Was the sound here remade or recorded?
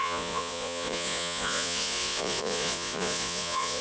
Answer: remade